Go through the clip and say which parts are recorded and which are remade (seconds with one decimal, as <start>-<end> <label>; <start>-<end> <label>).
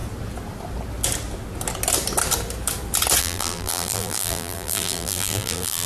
0.0-3.2 recorded; 3.2-5.9 remade